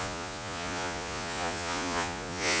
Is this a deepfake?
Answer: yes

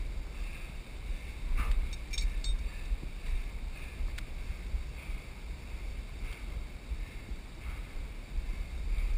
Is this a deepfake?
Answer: no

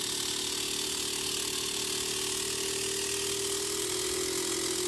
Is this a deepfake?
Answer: no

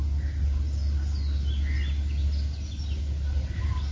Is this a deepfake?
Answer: no